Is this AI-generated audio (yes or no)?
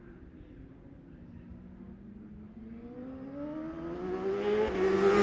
no